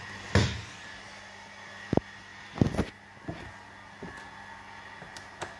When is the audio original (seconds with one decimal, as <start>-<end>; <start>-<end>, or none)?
0.0-5.6